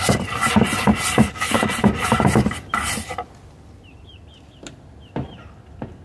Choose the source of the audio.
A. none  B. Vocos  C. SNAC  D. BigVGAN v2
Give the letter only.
A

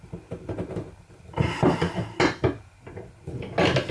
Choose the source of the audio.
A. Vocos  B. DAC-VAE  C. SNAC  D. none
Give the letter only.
D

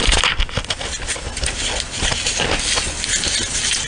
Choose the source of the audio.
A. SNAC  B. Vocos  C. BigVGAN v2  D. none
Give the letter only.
D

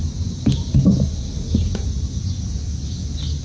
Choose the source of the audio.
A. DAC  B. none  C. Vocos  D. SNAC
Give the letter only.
B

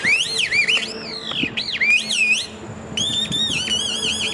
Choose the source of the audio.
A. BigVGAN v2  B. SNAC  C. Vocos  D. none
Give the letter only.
D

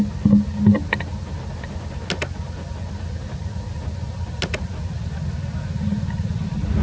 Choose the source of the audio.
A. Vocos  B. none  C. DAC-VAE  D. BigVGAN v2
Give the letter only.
B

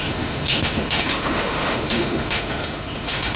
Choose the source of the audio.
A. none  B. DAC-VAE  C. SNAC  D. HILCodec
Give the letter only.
B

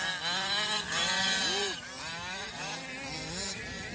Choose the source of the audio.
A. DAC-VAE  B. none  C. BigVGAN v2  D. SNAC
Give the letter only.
B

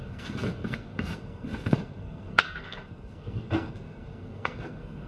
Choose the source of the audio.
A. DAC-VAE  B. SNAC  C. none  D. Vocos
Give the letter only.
B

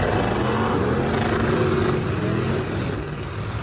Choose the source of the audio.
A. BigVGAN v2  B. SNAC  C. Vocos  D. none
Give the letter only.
D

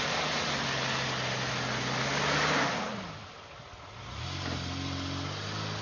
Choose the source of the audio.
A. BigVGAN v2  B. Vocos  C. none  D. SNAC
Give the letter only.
C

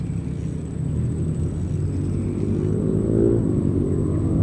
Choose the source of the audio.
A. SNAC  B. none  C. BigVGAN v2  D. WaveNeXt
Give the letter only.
B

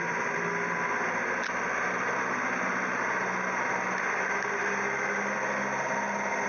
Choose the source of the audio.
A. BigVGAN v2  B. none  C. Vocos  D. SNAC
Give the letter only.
B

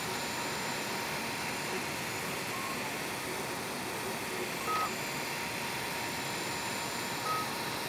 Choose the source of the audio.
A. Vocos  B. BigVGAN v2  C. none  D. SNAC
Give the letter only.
C